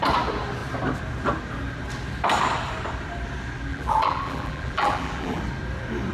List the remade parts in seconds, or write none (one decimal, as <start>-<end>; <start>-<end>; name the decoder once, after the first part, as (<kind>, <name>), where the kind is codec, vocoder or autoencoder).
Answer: 3.7-5.4 (vocoder, BigVGAN v2)